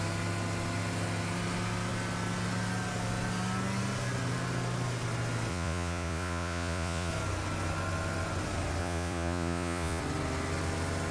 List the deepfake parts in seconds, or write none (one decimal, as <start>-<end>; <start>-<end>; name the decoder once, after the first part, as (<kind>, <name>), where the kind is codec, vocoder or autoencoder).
5.5-7.1 (vocoder, Vocos); 8.8-10.0